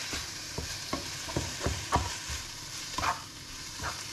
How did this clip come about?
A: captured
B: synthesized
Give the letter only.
B